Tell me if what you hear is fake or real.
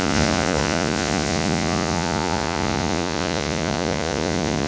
fake